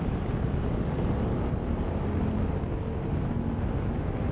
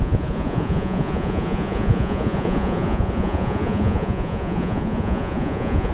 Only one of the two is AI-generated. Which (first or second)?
second